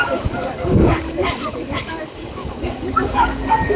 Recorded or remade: remade